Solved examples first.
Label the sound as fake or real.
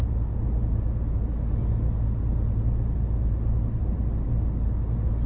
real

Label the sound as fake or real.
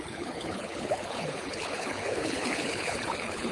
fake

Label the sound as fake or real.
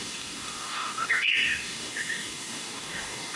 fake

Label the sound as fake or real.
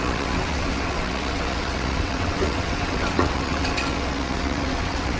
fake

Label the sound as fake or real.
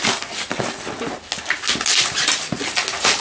real